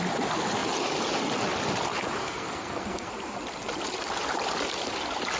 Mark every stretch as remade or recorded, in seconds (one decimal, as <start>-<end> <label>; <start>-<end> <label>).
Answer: 0.0-2.2 recorded; 2.2-3.1 remade; 3.1-5.4 recorded